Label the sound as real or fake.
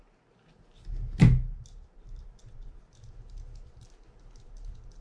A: real